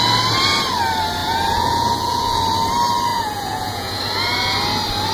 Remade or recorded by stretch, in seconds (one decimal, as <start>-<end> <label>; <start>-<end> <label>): 0.0-1.2 recorded; 1.2-2.4 remade; 2.4-3.1 recorded; 3.1-4.0 remade; 4.0-5.1 recorded